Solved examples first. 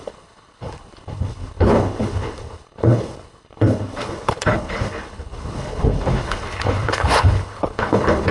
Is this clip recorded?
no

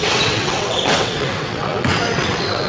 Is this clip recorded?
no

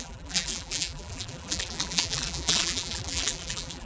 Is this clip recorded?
no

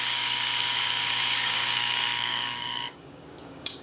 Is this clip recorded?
no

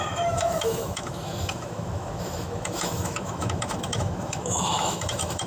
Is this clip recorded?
no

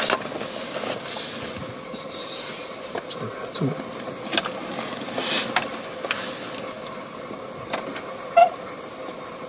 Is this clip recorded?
yes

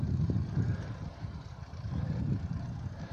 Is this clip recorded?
no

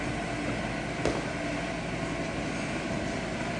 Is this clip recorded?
yes